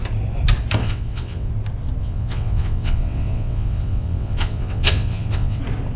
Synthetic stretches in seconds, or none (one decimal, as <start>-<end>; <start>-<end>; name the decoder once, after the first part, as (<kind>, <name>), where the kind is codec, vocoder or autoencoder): 0.8-1.5 (vocoder, WaveNeXt); 2.0-5.6